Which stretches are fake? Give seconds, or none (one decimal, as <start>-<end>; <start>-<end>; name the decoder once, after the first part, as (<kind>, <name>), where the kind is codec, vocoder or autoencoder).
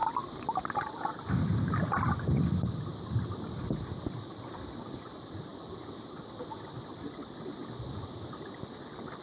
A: none